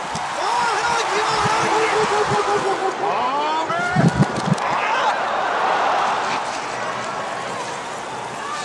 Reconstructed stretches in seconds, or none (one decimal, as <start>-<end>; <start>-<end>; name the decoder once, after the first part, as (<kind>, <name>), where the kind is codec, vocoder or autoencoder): none